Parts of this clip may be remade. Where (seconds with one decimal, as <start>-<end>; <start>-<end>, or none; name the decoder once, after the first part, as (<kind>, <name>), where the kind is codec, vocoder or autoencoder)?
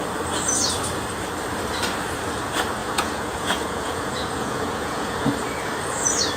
2.8-5.3 (vocoder, Vocos)